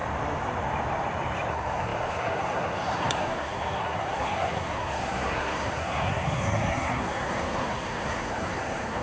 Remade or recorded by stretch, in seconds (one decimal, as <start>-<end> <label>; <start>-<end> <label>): 0.0-1.5 recorded; 1.5-9.0 remade